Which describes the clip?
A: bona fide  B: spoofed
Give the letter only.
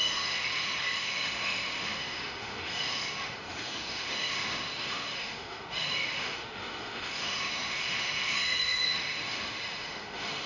B